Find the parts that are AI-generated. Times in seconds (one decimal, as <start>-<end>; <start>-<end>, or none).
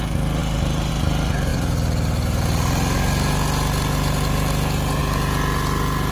none